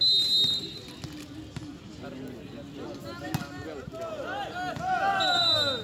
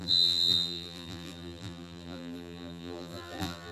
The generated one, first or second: second